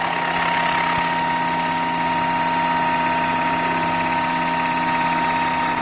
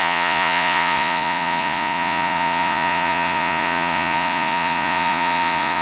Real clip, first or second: first